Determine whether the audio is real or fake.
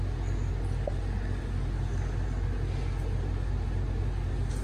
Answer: real